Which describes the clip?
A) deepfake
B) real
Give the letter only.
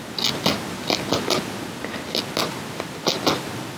B